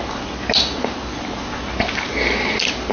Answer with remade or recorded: recorded